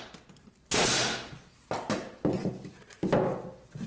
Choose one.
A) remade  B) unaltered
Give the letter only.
B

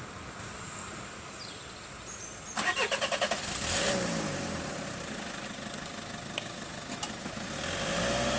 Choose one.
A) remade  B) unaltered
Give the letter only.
B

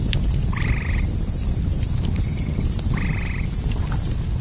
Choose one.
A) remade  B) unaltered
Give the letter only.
B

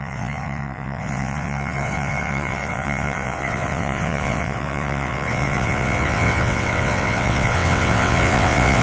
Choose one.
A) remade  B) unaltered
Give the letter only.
A